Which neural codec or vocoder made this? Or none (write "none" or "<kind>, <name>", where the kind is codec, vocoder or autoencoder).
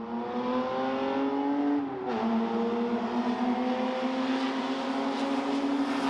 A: none